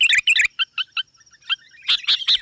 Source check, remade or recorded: recorded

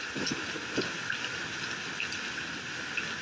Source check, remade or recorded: recorded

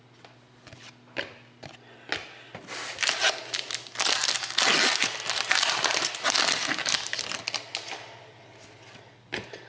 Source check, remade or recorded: recorded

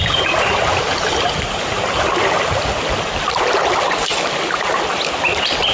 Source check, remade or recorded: recorded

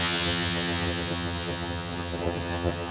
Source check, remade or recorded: remade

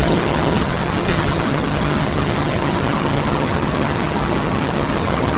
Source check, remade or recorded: remade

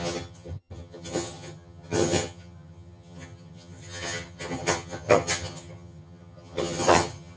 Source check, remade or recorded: remade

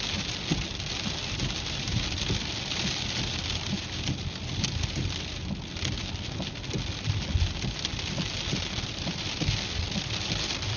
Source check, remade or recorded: recorded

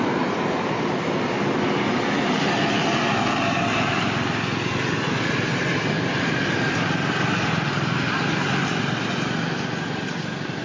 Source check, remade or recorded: recorded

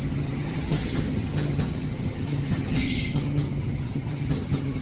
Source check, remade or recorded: remade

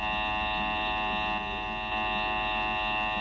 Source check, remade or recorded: recorded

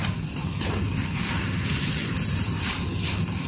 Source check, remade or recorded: recorded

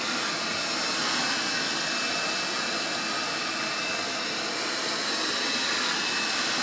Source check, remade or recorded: recorded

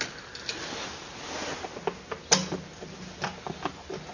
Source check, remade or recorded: recorded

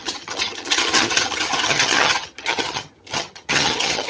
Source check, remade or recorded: remade